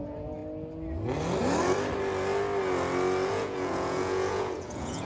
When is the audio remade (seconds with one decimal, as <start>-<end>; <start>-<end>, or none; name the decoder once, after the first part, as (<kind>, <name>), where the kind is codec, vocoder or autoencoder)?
0.0-0.4 (vocoder, Vocos); 3.3-5.0